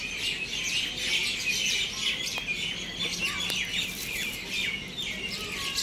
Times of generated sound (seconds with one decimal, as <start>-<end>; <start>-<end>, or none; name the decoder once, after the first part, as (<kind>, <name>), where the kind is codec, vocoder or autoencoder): none